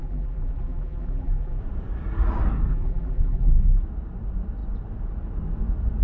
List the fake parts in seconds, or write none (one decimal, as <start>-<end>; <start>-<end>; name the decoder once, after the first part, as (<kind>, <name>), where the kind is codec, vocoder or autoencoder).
0.0-1.6 (vocoder, BigVGAN v2); 2.7-3.8